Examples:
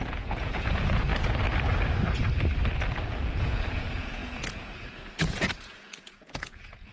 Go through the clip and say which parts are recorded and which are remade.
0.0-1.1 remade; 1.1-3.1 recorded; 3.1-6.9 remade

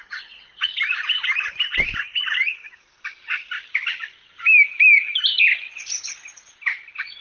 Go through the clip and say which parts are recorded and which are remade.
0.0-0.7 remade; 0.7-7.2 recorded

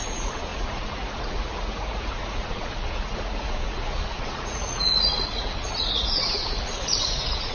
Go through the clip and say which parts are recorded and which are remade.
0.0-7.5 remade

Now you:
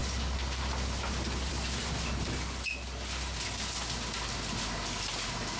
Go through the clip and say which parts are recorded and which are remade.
0.0-5.6 recorded